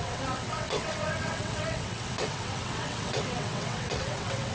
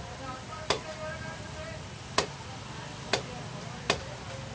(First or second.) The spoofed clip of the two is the first